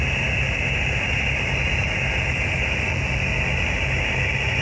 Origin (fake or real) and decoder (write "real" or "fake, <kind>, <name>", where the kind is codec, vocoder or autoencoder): fake, vocoder, BigVGAN v2